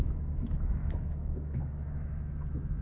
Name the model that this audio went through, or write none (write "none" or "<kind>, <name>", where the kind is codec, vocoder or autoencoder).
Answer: autoencoder, DAC-VAE